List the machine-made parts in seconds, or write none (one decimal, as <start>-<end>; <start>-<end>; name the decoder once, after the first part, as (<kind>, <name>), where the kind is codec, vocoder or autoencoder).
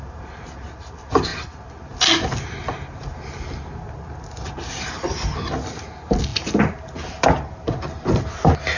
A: none